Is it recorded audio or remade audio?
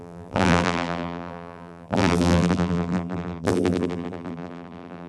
remade